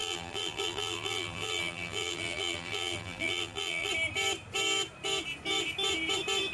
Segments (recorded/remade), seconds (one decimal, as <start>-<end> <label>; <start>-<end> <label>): 0.0-3.9 remade; 3.9-6.5 recorded